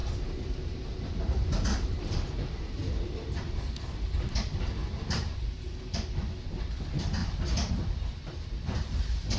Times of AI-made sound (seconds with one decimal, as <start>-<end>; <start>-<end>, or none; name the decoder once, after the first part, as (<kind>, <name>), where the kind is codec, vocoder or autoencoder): 0.0-2.3 (vocoder, BigVGAN v2); 4.8-5.6; 7.2-7.7